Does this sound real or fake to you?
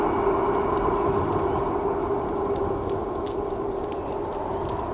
real